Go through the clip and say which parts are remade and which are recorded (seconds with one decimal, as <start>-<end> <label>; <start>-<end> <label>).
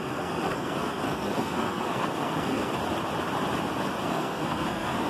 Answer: 0.0-2.7 remade; 2.7-4.0 recorded; 4.0-5.1 remade